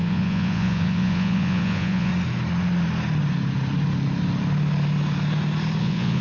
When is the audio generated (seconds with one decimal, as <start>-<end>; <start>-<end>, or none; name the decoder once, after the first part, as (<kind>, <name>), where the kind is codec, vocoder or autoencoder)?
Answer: 0.0-2.1 (vocoder, Vocos); 5.8-6.2